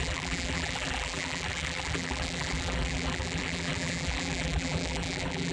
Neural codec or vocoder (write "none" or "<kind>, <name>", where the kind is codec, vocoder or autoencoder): vocoder, BigVGAN v2